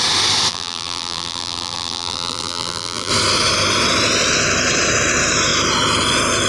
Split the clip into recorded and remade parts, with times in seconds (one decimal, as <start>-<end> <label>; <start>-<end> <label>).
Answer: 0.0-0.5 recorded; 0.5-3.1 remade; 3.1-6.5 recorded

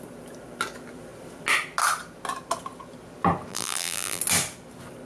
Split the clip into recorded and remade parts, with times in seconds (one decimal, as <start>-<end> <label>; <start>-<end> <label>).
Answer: 0.0-3.5 recorded; 3.5-4.2 remade; 4.2-5.1 recorded

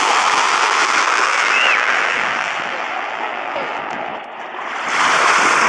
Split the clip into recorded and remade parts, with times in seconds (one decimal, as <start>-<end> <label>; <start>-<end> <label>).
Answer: 0.0-4.1 remade; 4.1-5.7 recorded

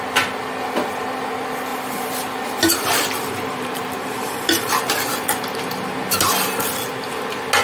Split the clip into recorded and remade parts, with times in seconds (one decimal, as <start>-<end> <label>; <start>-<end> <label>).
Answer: 0.0-1.7 recorded; 1.7-4.7 remade; 4.7-7.6 recorded

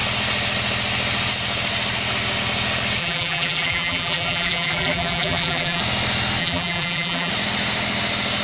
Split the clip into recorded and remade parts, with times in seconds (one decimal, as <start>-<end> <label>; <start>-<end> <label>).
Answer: 0.0-3.0 recorded; 3.0-5.8 remade; 5.8-6.4 recorded; 6.4-7.3 remade; 7.3-8.4 recorded

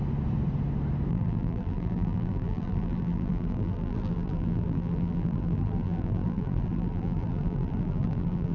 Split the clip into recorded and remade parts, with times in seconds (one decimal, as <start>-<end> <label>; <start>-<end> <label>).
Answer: 0.0-1.1 recorded; 1.1-8.5 remade